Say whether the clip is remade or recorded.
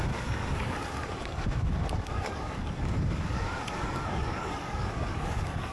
remade